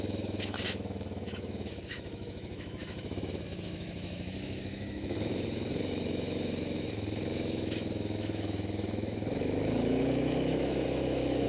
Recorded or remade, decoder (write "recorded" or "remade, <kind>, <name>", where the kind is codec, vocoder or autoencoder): remade, autoencoder, DAC-VAE